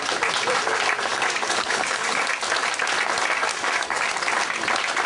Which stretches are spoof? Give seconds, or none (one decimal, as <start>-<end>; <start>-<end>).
1.1-2.2; 3.5-4.1